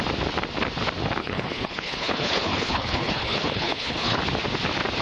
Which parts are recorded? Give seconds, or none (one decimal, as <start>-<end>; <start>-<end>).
0.0-1.2; 4.2-5.0